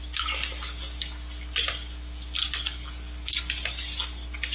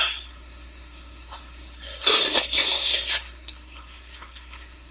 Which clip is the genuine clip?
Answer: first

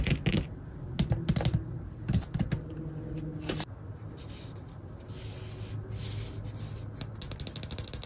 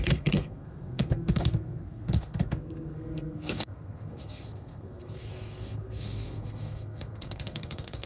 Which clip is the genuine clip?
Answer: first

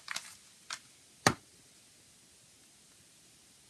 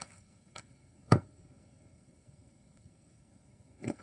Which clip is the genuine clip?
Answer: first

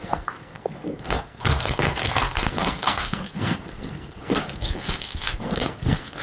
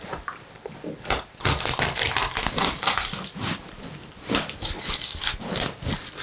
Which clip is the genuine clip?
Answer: second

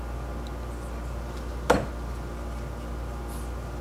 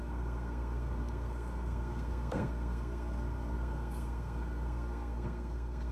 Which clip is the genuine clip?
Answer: first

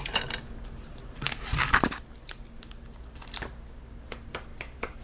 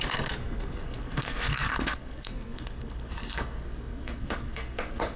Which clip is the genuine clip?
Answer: first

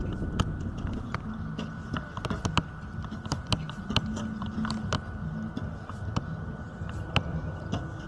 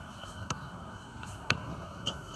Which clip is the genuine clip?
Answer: first